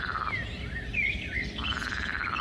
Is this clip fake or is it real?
real